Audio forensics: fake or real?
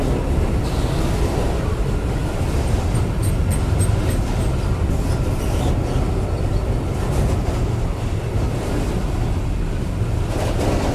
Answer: real